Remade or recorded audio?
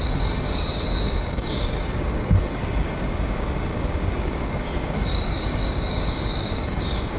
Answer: remade